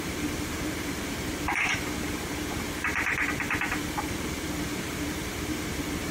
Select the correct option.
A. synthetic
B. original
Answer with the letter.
A